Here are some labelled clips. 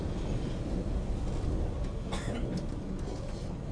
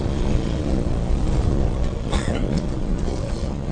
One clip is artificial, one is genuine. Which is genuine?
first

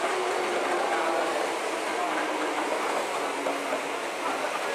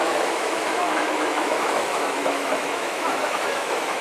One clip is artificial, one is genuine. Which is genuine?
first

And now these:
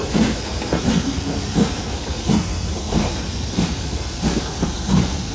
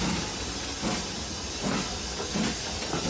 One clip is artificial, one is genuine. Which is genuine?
second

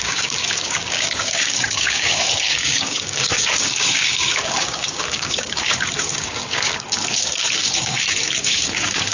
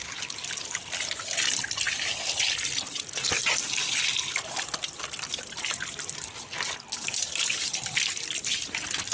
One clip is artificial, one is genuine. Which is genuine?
second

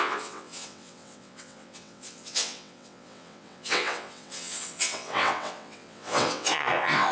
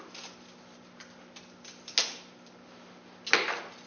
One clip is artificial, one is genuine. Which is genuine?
second